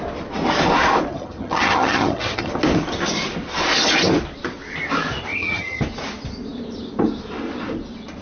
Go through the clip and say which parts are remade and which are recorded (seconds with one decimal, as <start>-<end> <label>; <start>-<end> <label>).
0.0-1.1 recorded; 1.1-2.5 remade; 2.5-5.3 recorded; 5.3-5.8 remade; 5.8-8.2 recorded